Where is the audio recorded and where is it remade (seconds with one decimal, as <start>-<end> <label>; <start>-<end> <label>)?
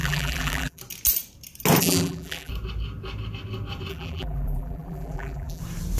0.0-0.8 remade; 0.8-1.8 recorded; 1.8-2.5 remade; 2.5-3.9 recorded; 3.9-5.6 remade; 5.6-6.0 recorded